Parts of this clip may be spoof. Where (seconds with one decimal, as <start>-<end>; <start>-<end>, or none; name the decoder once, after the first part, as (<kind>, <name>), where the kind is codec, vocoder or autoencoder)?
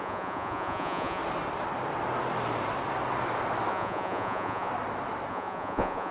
0.0-1.2 (vocoder, Vocos); 3.7-4.7; 5.3-6.1